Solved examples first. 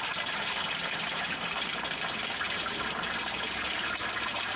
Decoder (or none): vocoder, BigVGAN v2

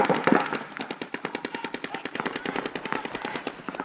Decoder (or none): none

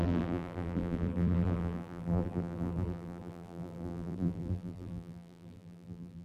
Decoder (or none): vocoder, BigVGAN v2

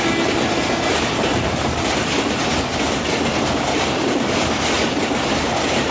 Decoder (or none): none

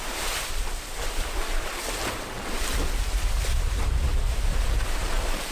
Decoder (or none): vocoder, BigVGAN v2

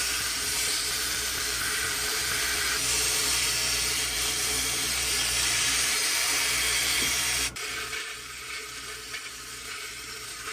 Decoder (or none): vocoder, BigVGAN v2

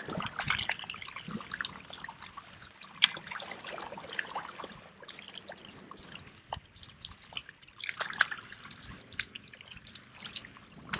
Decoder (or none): none